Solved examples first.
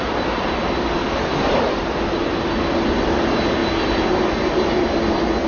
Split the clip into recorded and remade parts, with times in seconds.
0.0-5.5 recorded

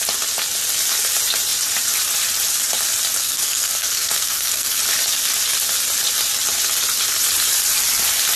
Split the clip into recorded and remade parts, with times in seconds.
0.0-3.2 recorded; 3.2-4.8 remade; 4.8-8.4 recorded

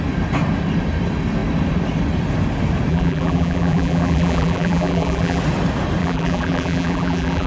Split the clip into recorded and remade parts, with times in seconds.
0.0-2.9 recorded; 2.9-5.4 remade; 5.4-6.0 recorded; 6.0-7.5 remade

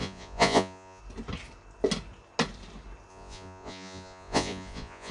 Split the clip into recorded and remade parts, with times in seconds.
0.0-1.0 remade; 1.0-3.1 recorded; 3.1-5.1 remade

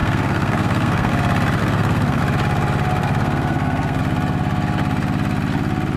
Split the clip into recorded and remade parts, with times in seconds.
0.0-1.1 remade; 1.1-1.6 recorded; 1.6-2.2 remade; 2.2-3.0 recorded; 3.0-4.0 remade; 4.0-6.0 recorded

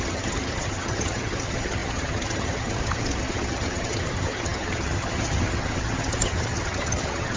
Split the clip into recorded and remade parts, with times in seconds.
0.0-7.4 remade

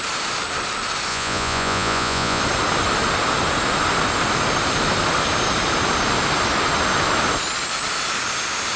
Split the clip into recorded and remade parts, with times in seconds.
0.0-1.1 recorded; 1.1-2.4 remade; 2.4-8.8 recorded

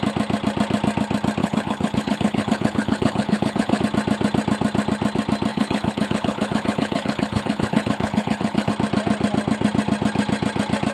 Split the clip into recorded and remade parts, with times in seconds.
0.0-1.4 recorded; 1.4-3.8 remade; 3.8-5.5 recorded; 5.5-8.7 remade; 8.7-10.9 recorded